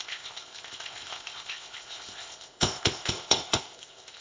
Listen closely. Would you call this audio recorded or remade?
remade